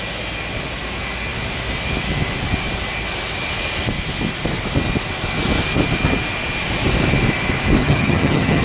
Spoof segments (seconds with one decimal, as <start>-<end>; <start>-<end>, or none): 7.8-8.6